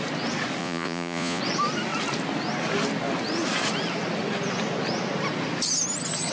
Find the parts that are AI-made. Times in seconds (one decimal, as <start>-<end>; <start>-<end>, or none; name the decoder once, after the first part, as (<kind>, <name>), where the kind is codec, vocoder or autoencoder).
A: 0.6-1.4 (vocoder, Vocos)

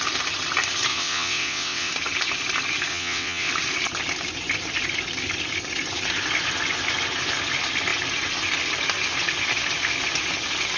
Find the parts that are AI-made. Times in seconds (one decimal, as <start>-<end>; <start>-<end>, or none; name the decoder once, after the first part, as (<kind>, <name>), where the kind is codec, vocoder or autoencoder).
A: 0.9-1.9 (vocoder, WaveNeXt); 2.9-3.5

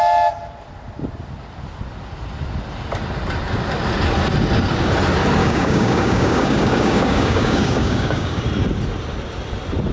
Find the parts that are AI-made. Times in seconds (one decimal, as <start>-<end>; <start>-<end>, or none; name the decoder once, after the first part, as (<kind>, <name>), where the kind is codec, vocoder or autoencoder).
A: 5.4-8.4 (codec, DAC)

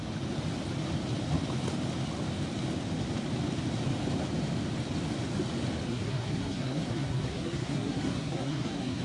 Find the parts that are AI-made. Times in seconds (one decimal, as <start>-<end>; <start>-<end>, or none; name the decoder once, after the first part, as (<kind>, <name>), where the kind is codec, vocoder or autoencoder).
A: 5.9-9.0 (codec, SNAC)

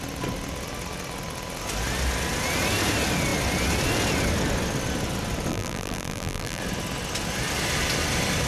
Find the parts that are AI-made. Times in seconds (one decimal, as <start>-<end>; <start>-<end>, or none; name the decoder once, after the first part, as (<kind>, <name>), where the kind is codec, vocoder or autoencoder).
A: 5.5-6.6 (vocoder, BigVGAN v2)